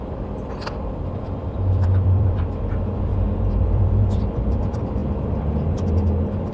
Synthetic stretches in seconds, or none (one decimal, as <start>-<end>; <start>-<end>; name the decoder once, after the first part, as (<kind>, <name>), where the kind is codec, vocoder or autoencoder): 0.0-3.1 (vocoder, BigVGAN v2); 3.6-5.0

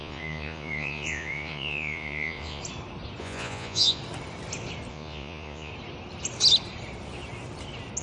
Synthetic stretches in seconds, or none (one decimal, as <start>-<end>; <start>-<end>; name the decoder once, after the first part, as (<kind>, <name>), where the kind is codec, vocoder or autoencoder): 0.0-2.6 (vocoder, Vocos); 3.2-4.0; 4.9-5.7